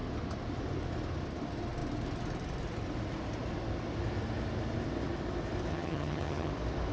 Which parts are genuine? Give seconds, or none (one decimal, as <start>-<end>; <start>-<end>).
0.0-5.7; 6.5-6.9